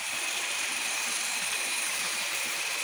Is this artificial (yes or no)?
yes